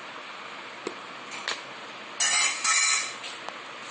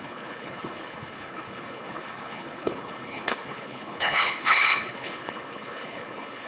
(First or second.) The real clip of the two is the first